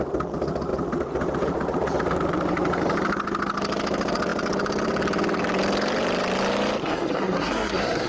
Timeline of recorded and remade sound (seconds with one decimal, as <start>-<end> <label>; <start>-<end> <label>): 0.0-6.8 recorded; 6.8-8.1 remade